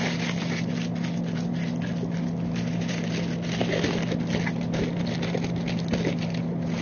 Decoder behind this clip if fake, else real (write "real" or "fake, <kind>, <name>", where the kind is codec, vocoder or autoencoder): real